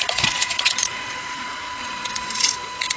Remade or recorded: remade